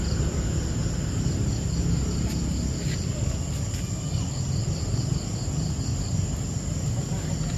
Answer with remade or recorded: recorded